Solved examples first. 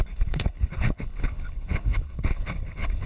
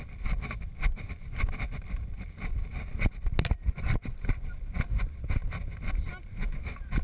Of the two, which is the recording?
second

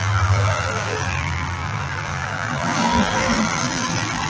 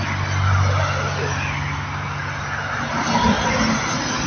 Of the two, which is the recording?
second